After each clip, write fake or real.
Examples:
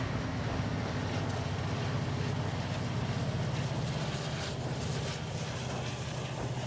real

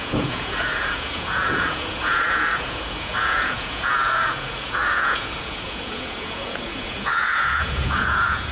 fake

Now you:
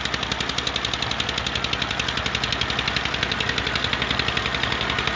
real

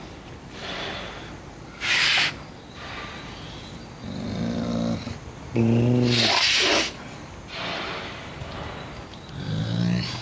real